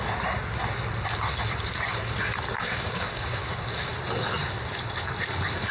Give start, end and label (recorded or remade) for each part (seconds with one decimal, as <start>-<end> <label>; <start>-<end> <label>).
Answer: 0.0-2.6 recorded; 2.6-3.9 remade; 3.9-5.7 recorded